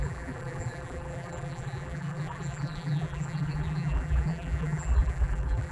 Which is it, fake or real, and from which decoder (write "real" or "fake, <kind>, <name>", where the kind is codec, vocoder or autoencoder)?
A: fake, vocoder, BigVGAN v2